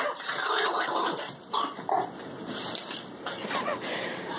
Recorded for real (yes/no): no